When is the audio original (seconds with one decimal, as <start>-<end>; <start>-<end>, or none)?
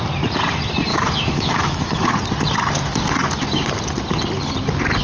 0.0-0.9; 2.1-5.0